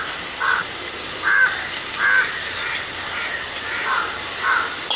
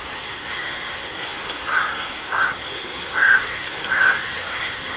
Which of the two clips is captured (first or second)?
first